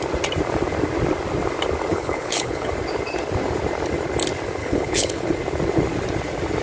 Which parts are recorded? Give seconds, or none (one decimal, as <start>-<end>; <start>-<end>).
0.0-1.9; 2.7-4.6; 5.3-6.6